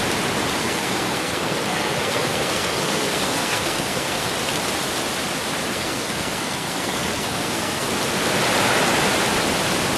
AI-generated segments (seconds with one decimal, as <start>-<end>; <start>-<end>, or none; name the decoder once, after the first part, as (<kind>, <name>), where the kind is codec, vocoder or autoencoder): 0.6-4.3 (codec, SNAC); 5.7-7.9